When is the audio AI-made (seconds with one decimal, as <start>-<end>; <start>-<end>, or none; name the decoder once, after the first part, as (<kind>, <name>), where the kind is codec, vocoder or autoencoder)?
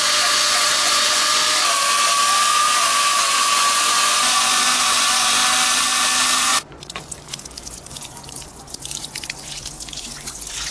0.0-1.4 (vocoder, Vocos); 2.5-5.4; 6.4-10.7